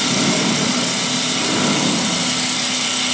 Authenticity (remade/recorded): recorded